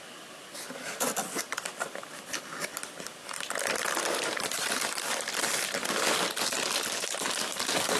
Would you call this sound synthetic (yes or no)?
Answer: yes